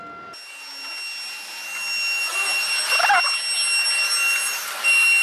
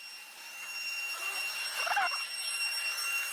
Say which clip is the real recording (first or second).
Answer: first